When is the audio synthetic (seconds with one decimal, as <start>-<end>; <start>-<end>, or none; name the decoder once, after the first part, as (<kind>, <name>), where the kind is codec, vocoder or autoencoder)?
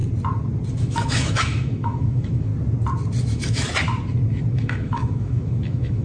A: 0.7-2.5 (autoencoder, DAC-VAE); 3.2-3.7; 4.5-6.0